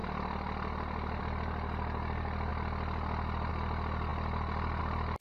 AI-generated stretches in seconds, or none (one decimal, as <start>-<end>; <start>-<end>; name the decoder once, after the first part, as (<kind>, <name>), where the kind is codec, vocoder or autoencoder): none